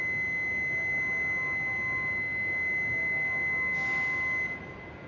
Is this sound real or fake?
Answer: real